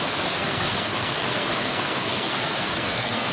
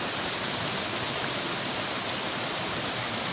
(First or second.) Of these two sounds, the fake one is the first